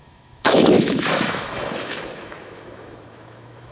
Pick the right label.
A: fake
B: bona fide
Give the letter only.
A